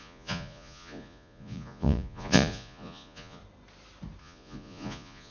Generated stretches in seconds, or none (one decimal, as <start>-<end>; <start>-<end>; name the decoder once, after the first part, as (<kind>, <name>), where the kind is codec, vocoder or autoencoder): 0.0-3.4 (vocoder, Vocos); 4.2-5.3